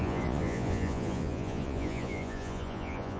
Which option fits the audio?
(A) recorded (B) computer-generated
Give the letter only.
B